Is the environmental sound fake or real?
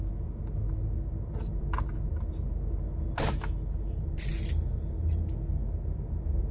real